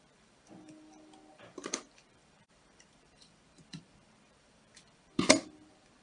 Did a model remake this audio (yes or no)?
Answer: yes